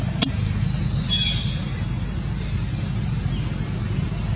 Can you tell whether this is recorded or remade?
recorded